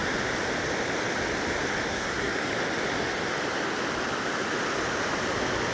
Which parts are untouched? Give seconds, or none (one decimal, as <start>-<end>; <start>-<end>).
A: 0.0-1.9; 2.5-5.7